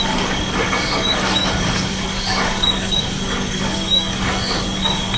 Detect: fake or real fake